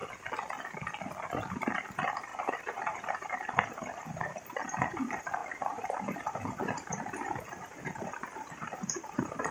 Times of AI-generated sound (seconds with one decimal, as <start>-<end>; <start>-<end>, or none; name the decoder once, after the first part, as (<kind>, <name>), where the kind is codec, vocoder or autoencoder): 1.5-9.5 (vocoder, BigVGAN v2)